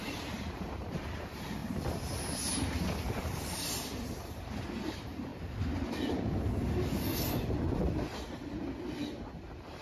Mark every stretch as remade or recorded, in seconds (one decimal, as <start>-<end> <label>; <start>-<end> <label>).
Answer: 0.0-1.6 remade; 1.6-3.2 recorded; 3.2-5.3 remade; 5.3-9.2 recorded; 9.2-9.8 remade